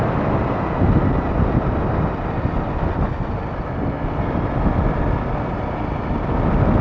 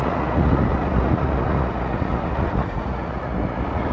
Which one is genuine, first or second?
first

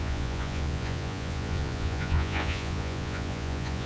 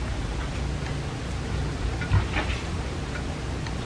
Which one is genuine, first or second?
second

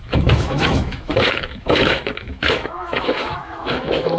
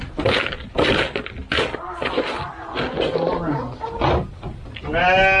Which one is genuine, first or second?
second